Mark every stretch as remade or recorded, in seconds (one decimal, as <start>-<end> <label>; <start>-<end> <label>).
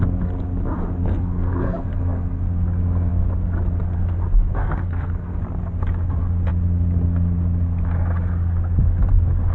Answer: 0.0-1.0 recorded; 1.0-2.4 remade; 2.4-4.6 recorded; 4.6-5.4 remade; 5.4-9.5 recorded